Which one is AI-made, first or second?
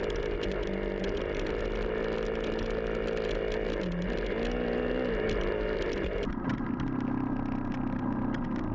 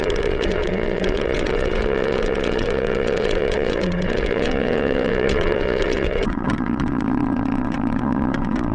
second